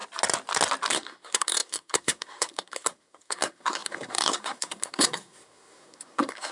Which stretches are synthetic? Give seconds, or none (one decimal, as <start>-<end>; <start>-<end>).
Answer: 0.9-6.5